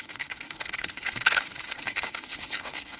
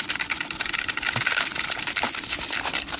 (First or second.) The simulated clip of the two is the first